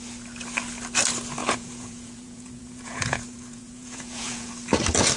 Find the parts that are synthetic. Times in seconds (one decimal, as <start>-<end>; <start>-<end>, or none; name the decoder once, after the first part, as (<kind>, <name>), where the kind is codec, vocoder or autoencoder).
1.4-4.5 (vocoder, Vocos)